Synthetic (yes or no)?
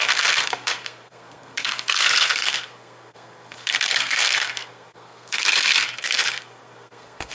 yes